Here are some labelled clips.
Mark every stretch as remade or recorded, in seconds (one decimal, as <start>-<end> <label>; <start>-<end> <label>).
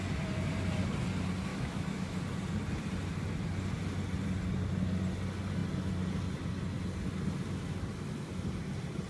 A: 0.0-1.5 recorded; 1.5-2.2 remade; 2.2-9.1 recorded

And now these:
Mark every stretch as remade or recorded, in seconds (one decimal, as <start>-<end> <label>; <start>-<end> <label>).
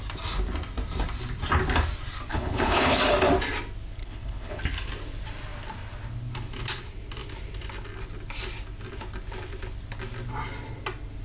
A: 0.0-2.3 recorded; 2.3-3.0 remade; 3.0-4.0 recorded; 4.0-4.6 remade; 4.6-11.2 recorded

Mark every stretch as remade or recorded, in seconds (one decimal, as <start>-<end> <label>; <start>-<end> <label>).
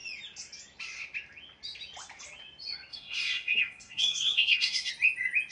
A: 0.0-2.9 recorded; 2.9-4.9 remade; 4.9-5.5 recorded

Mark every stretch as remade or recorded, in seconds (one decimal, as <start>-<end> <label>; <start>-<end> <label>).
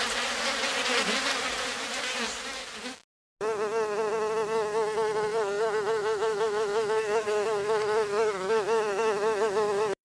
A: 0.0-6.0 recorded; 6.0-10.1 remade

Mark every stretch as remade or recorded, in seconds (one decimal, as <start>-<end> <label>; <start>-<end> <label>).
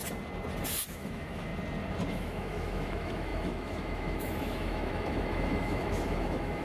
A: 0.0-0.9 recorded; 0.9-1.5 remade; 1.5-2.1 recorded; 2.1-6.6 remade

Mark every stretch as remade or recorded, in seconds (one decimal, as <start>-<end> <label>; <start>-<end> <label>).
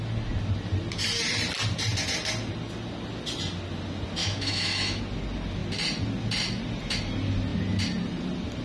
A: 0.0-4.2 recorded; 4.2-5.0 remade; 5.0-8.6 recorded